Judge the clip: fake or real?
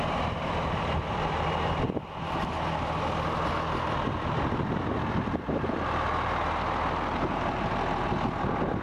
real